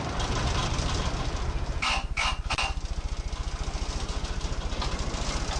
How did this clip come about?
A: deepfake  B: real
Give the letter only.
B